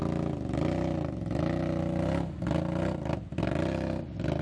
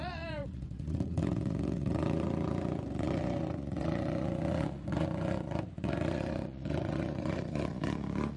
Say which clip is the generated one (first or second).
second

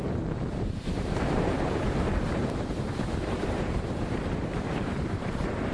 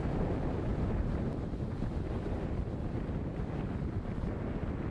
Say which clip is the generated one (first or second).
first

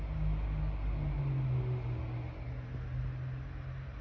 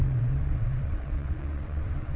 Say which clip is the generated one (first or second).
second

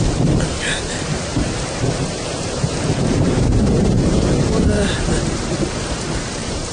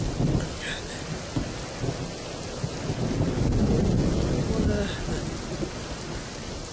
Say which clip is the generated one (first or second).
first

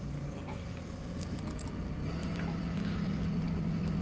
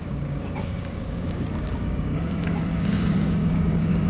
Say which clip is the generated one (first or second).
second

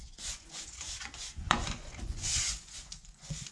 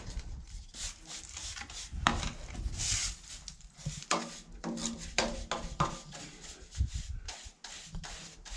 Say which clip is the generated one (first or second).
first